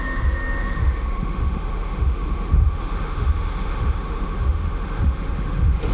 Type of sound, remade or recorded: remade